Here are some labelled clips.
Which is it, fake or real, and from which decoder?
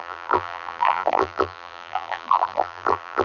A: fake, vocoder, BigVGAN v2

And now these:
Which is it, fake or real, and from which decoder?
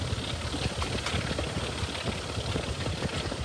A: real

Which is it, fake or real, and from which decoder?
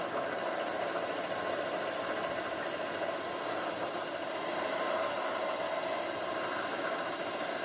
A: real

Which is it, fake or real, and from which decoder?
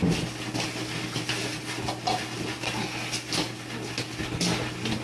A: real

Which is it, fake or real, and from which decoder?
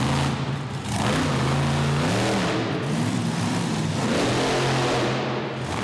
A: real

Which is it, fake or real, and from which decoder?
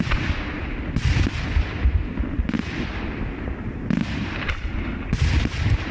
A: fake, vocoder, BigVGAN v2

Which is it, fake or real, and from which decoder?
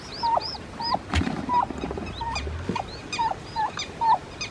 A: real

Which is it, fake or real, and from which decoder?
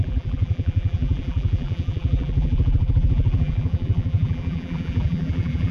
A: fake, vocoder, BigVGAN v2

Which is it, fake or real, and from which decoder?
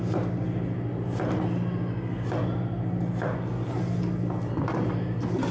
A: real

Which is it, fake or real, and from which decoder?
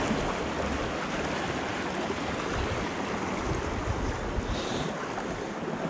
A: real